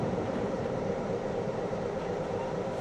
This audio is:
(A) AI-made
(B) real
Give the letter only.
A